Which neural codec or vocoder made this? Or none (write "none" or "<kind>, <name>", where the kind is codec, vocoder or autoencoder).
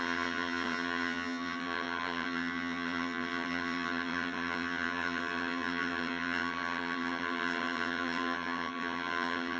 vocoder, HiFi-GAN